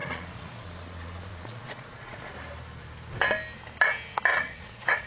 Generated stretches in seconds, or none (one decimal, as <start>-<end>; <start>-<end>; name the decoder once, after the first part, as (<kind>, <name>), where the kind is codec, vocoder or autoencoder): 0.0-2.3 (vocoder, Vocos); 4.3-5.1